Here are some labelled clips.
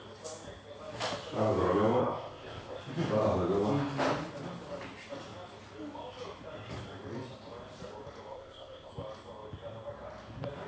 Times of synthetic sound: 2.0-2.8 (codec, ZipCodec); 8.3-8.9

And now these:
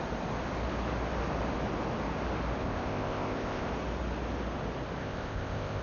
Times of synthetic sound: 2.6-3.7 (codec, ZipCodec); 5.0-5.8

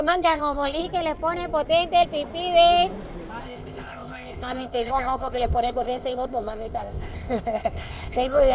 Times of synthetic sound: 0.0-0.8 (codec, ZipCodec); 3.4-8.5

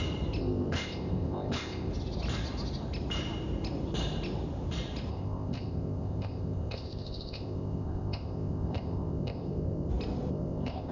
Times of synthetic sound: 0.4-1.9 (codec, ZipCodec); 5.1-9.9; 10.3-10.9

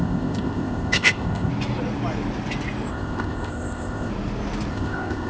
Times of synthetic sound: 0.0-1.5 (codec, ZipCodec); 2.9-4.1; 4.7-5.3

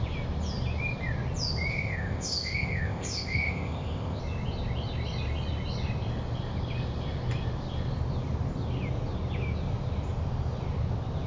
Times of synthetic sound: 1.7-4.2 (codec, ZipCodec)

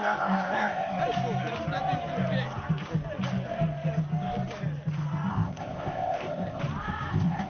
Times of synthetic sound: 0.0-1.0 (codec, ZipCodec); 5.3-6.6; 7.1-7.5

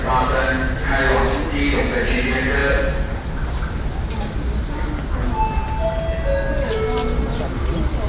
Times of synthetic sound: none